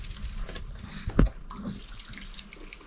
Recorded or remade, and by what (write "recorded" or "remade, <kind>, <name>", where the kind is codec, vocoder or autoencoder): recorded